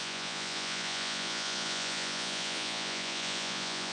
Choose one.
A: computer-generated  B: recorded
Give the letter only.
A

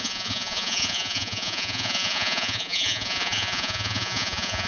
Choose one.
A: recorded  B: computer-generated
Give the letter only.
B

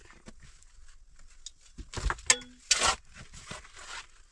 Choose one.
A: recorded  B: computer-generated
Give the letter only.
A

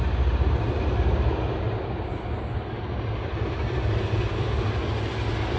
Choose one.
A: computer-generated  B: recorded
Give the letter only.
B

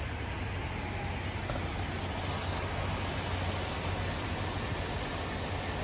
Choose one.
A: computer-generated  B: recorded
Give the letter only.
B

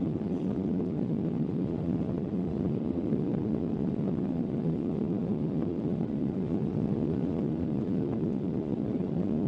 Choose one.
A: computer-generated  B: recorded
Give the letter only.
A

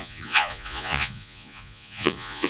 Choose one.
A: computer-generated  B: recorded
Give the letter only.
A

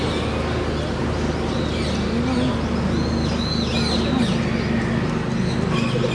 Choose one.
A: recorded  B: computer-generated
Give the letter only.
A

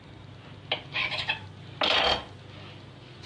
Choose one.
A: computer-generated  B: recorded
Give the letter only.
B